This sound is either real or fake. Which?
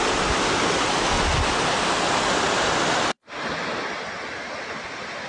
real